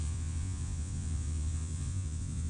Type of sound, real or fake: fake